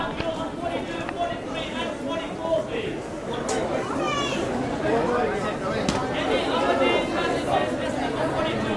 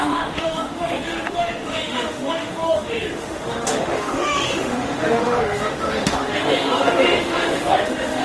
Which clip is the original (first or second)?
first